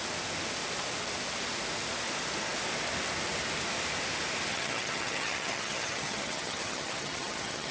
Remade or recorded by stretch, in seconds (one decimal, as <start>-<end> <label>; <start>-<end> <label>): 0.0-4.5 recorded; 4.5-7.7 remade